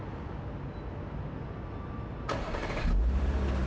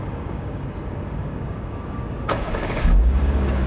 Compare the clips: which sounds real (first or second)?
first